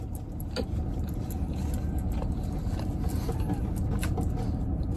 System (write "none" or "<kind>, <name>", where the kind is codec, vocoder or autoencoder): none